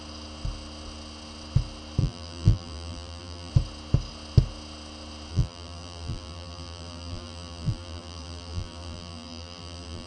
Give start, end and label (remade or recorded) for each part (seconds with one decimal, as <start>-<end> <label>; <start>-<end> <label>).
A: 0.0-2.0 recorded; 2.0-3.5 remade; 3.5-5.3 recorded; 5.3-10.1 remade